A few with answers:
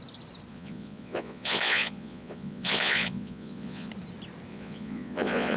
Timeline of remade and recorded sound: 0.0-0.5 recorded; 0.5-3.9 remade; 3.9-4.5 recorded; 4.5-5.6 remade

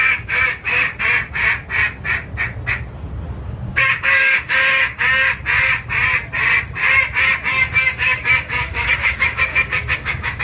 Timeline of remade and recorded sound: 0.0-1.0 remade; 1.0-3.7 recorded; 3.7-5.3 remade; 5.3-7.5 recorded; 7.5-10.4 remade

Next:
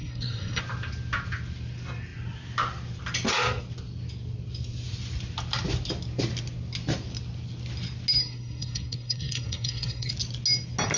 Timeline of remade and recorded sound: 0.0-0.6 remade; 0.6-8.2 recorded; 8.2-10.1 remade; 10.1-11.0 recorded